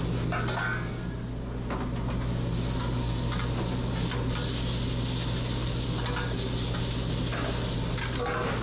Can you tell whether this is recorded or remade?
recorded